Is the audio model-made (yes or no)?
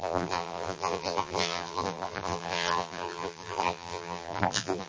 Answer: yes